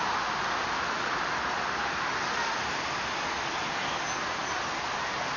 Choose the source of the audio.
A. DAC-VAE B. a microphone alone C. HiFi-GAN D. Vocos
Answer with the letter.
B